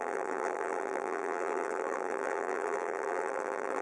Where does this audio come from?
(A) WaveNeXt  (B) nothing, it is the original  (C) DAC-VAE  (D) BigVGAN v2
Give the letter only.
D